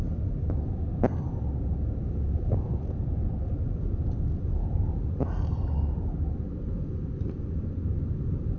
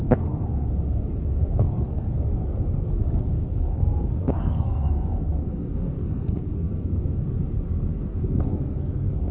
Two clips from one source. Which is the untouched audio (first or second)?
first